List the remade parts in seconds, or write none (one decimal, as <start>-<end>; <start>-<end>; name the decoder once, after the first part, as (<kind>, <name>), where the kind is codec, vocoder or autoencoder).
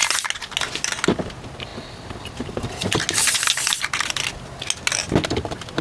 none